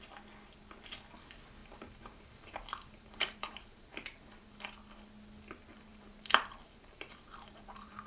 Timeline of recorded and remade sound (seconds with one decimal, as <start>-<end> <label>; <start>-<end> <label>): 0.0-1.6 recorded; 1.6-4.6 remade; 4.6-5.7 recorded; 5.7-8.1 remade